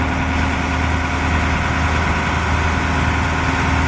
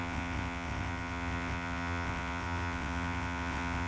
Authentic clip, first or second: first